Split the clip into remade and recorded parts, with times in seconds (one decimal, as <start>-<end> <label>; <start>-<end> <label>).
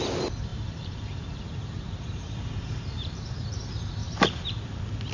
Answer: 0.0-0.5 recorded; 0.5-3.6 remade; 3.6-4.0 recorded; 4.0-4.5 remade; 4.5-5.1 recorded